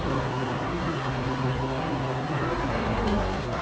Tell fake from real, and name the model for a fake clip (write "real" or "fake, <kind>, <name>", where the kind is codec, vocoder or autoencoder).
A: fake, codec, SNAC